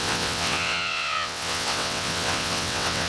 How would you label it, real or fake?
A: fake